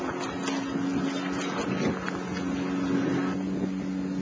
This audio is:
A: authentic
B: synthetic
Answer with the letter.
A